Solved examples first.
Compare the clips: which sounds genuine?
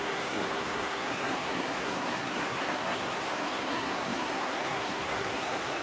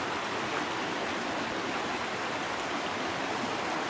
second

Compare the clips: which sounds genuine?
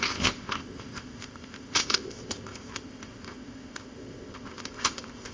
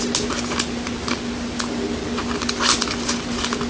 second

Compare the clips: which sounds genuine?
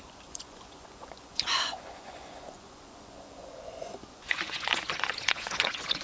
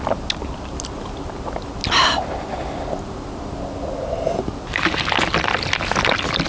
second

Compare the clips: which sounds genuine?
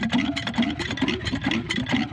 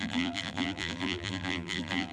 first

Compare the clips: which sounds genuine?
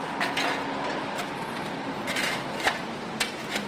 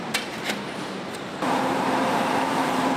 first